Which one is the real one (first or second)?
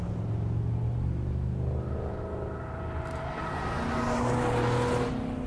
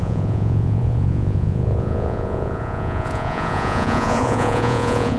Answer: first